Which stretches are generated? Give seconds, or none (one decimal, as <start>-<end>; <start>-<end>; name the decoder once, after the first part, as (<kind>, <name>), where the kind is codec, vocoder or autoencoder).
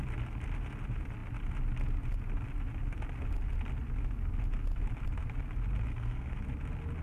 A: 5.9-6.4 (codec, SNAC)